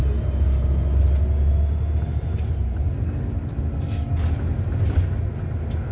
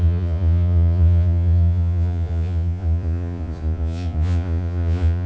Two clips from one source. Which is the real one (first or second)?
first